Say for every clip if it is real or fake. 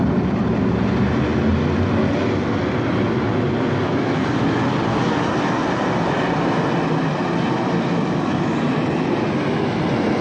real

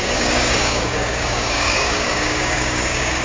fake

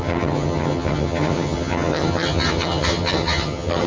fake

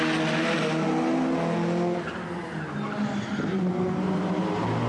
real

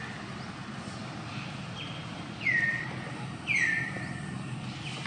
real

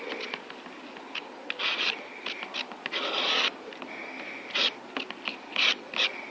real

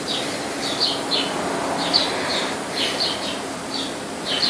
fake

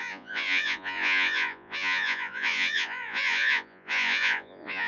fake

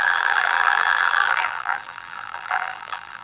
fake